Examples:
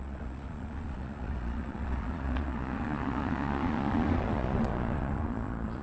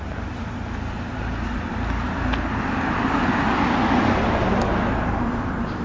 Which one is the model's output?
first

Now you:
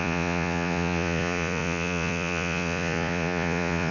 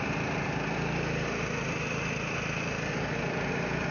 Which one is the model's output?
first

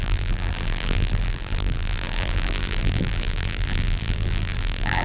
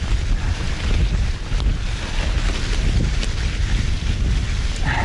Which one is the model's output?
first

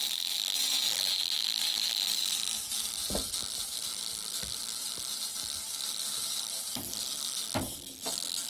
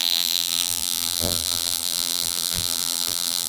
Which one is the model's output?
second